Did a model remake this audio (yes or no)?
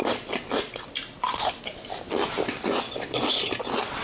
no